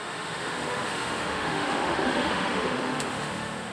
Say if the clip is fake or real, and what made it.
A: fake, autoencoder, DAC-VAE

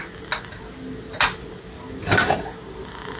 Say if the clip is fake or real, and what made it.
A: real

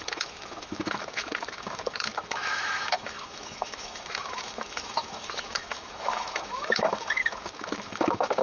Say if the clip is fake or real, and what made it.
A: fake, autoencoder, DAC-VAE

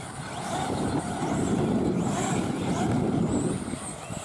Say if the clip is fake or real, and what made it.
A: real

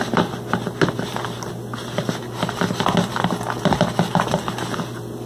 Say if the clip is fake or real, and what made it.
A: real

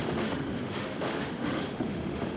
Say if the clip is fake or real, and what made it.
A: fake, autoencoder, DAC-VAE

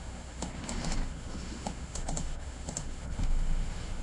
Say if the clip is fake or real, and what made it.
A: fake, autoencoder, DAC-VAE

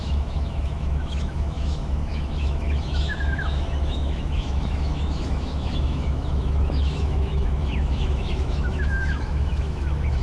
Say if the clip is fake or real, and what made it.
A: fake, autoencoder, DAC-VAE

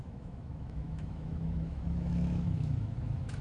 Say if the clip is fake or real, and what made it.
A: fake, autoencoder, DAC-VAE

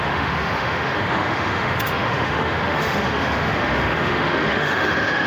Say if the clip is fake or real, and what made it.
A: fake, autoencoder, DAC-VAE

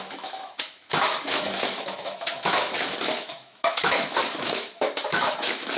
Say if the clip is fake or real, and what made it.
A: fake, autoencoder, DAC-VAE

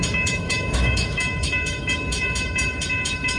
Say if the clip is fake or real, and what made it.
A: fake, autoencoder, DAC-VAE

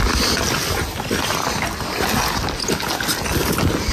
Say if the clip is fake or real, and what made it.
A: real